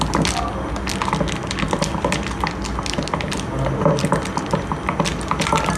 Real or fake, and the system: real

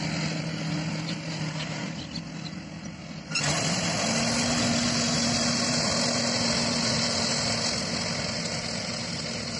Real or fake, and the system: real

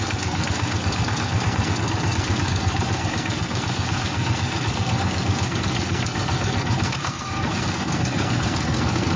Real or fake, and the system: fake, codec, SNAC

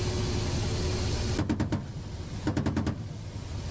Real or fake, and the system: real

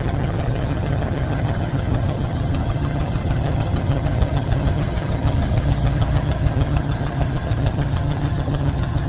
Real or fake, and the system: fake, vocoder, HiFi-GAN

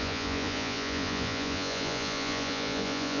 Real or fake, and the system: fake, vocoder, Vocos